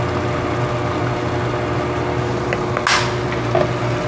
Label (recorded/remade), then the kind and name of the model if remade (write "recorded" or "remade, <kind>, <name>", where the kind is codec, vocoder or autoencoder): recorded